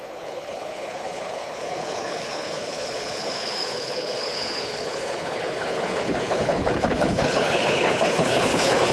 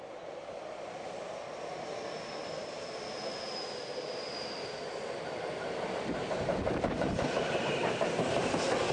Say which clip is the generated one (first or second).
first